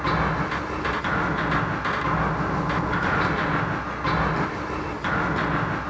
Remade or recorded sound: recorded